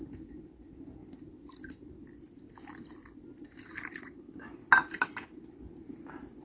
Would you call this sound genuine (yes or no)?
yes